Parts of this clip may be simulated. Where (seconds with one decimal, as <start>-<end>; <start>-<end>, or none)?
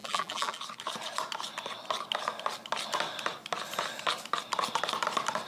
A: 0.0-0.6